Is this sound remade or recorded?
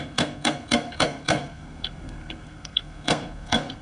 remade